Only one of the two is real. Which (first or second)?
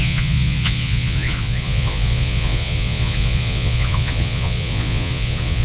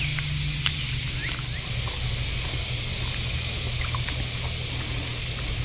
second